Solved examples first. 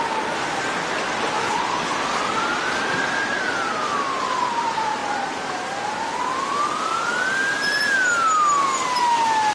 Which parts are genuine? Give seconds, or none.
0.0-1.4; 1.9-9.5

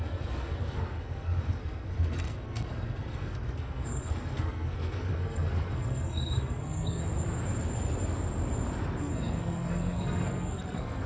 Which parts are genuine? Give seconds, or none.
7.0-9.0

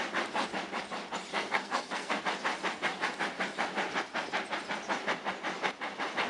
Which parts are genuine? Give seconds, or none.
0.0-1.3; 2.2-6.3

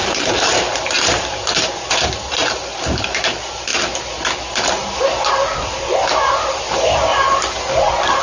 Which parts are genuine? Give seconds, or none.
3.7-4.7; 7.1-8.2

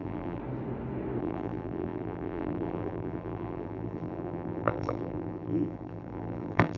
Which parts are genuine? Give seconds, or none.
0.4-1.2

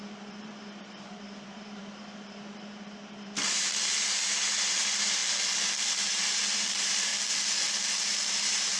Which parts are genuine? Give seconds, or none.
5.2-6.2; 7.1-8.3